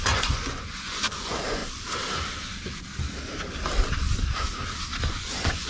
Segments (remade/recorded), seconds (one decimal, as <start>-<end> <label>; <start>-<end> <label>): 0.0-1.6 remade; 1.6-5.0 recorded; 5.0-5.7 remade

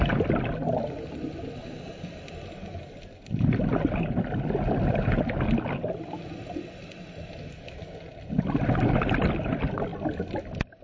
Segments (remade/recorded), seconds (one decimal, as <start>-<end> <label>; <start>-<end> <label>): 0.0-10.8 recorded

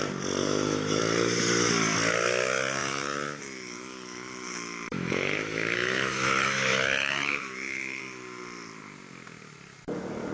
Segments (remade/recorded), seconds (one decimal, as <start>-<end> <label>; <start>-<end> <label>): 0.0-0.4 recorded; 0.4-1.0 remade; 1.0-2.8 recorded; 2.8-8.0 remade; 8.0-10.3 recorded

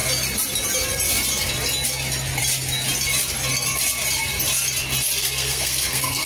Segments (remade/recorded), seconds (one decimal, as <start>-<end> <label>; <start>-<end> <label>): 0.0-5.2 recorded; 5.2-6.3 remade

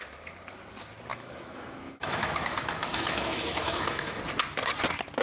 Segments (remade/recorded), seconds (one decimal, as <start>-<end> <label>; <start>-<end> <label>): 0.0-1.1 recorded; 1.1-4.2 remade; 4.2-5.2 recorded

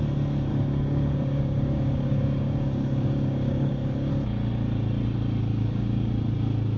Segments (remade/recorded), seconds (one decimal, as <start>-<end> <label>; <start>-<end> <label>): 0.0-0.5 recorded; 0.5-4.1 remade; 4.1-5.5 recorded; 5.5-6.1 remade; 6.1-6.8 recorded